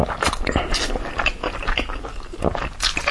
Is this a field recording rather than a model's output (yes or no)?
yes